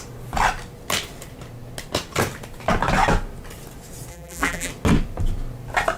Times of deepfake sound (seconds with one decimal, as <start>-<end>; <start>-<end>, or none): 4.1-4.7